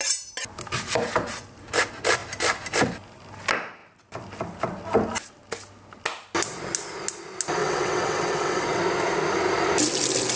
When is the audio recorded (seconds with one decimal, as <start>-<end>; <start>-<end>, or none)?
0.0-7.6; 8.8-10.4